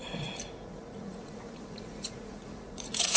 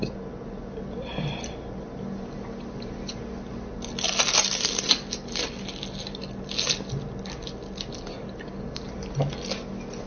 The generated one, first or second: first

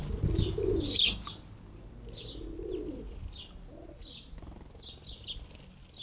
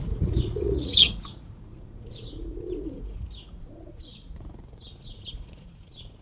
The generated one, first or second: second